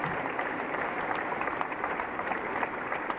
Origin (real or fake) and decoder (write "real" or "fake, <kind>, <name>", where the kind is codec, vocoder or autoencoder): fake, vocoder, BigVGAN v2